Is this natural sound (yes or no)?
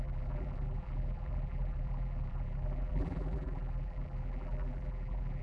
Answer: no